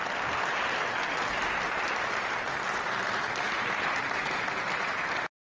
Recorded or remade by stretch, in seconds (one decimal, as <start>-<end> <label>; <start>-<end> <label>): 0.0-3.2 remade; 3.2-5.4 recorded